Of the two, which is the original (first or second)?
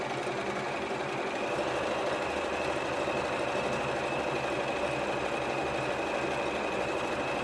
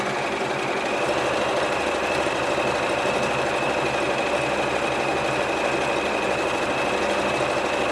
first